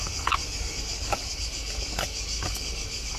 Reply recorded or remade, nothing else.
remade